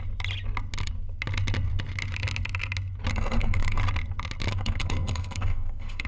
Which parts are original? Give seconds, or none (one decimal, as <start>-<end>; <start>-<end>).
0.0-3.1; 3.8-4.5